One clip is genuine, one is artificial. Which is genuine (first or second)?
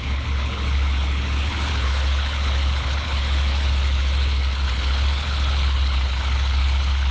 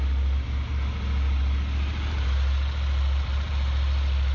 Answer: second